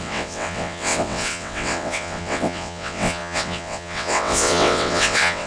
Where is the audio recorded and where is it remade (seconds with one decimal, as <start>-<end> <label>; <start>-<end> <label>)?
0.0-5.5 remade